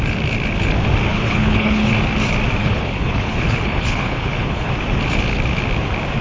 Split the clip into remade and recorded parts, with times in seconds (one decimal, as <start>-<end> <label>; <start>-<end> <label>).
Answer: 0.0-1.1 recorded; 1.1-1.9 remade; 1.9-2.6 recorded; 2.6-4.7 remade; 4.7-6.2 recorded